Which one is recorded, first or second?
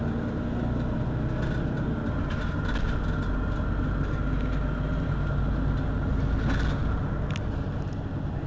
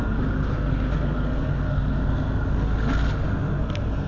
first